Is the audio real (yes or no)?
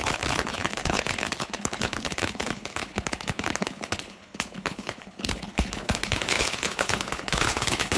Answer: no